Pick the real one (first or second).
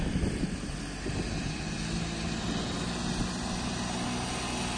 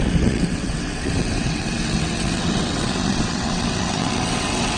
first